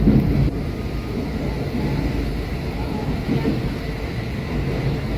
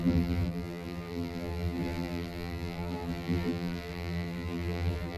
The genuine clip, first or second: first